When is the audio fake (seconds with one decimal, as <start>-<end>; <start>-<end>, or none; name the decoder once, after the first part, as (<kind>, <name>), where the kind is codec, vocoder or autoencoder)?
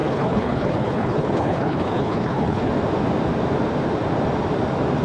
0.0-2.7 (codec, HILCodec)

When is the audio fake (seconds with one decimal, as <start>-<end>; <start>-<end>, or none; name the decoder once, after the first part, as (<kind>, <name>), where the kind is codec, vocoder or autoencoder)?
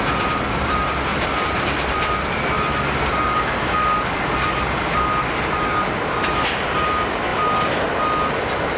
none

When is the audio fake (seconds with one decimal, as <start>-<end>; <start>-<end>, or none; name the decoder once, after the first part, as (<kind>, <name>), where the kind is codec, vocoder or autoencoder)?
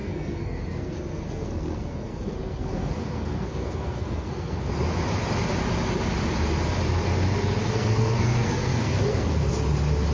0.0-4.7 (codec, SNAC); 7.6-9.5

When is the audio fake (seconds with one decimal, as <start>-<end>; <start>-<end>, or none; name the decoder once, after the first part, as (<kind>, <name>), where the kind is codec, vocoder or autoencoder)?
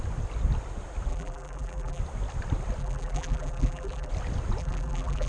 1.1-2.0 (vocoder, BigVGAN v2); 2.8-4.1; 4.6-5.3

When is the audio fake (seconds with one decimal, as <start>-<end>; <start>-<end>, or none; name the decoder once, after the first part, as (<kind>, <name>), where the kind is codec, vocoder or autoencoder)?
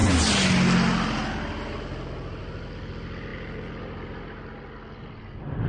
none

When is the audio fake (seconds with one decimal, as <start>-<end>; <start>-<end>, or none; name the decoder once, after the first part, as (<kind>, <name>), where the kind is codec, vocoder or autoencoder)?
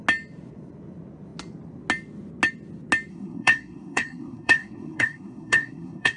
3.1-6.2 (codec, SNAC)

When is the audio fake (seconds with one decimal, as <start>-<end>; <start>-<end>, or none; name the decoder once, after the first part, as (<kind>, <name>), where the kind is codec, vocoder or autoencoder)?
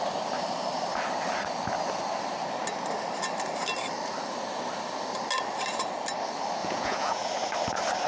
6.6-7.3 (vocoder, Vocos)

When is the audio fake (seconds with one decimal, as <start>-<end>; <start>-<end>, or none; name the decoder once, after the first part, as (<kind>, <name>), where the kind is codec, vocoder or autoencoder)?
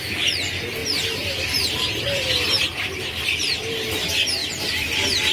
0.8-4.0 (vocoder, BigVGAN v2); 4.4-5.3